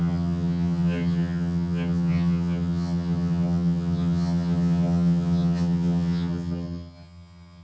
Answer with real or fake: fake